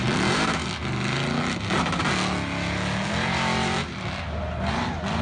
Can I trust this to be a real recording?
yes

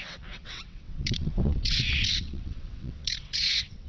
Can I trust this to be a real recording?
no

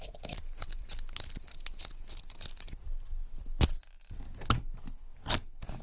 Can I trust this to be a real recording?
yes